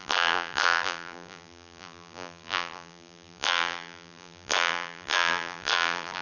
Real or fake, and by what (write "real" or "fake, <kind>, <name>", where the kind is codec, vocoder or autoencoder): fake, vocoder, BigVGAN v2